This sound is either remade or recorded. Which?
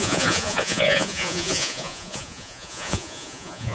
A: remade